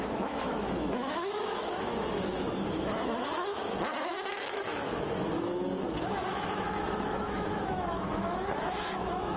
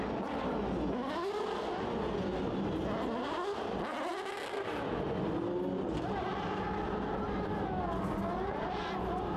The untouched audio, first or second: second